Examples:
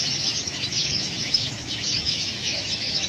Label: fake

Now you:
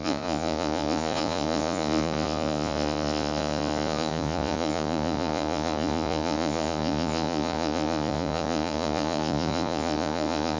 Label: fake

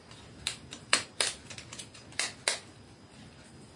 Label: real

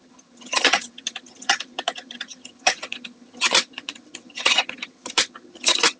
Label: fake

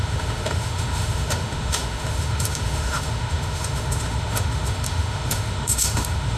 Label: fake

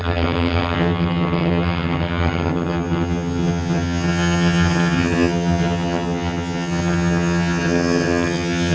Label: fake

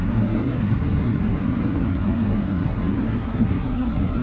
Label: fake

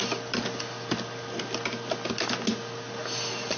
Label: real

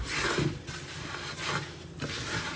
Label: real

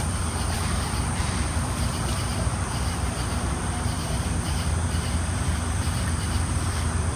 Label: fake